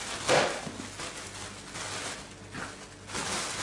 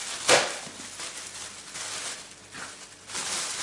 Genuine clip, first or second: first